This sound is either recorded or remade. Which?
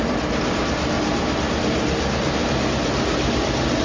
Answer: recorded